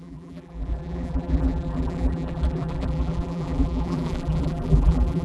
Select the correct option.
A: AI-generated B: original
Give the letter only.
A